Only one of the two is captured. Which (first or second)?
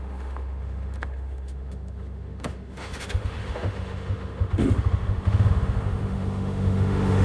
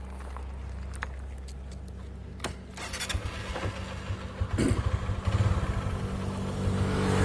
second